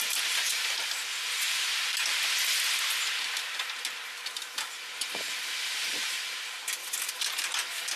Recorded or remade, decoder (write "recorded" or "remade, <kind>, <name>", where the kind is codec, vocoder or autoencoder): remade, vocoder, BigVGAN v2